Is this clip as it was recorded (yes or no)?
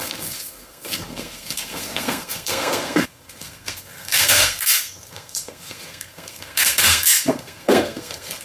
no